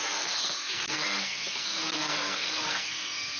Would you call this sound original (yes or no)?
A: no